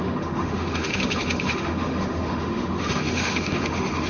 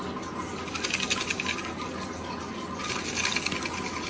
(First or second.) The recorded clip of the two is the second